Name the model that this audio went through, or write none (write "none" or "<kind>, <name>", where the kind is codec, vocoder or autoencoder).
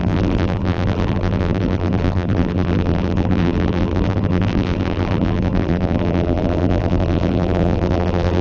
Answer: vocoder, BigVGAN v2